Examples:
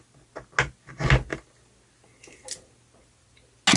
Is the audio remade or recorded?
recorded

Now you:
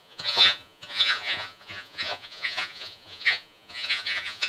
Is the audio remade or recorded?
remade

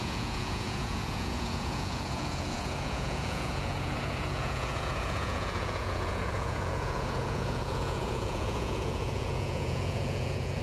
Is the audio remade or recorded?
remade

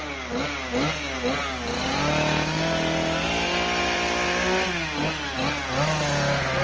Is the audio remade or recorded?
recorded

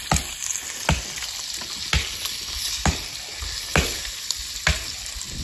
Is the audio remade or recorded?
recorded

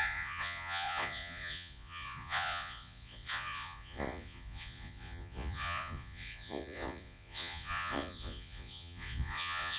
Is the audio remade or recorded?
remade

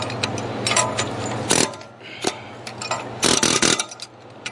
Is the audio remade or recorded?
recorded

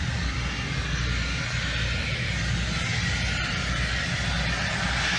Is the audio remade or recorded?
recorded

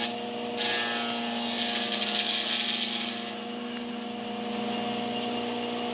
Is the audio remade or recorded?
recorded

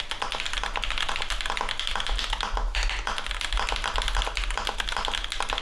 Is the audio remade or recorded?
recorded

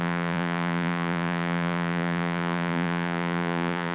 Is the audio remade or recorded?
remade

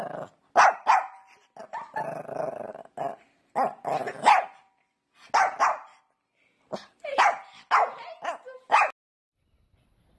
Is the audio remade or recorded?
recorded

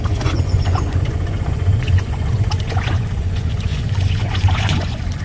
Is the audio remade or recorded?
remade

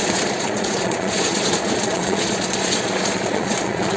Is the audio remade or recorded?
remade